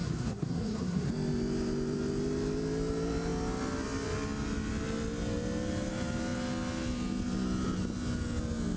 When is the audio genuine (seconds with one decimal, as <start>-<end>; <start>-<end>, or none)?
1.1-8.8